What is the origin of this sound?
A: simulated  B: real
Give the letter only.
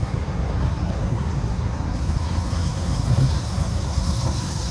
A